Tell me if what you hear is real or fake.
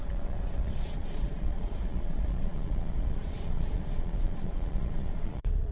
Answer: fake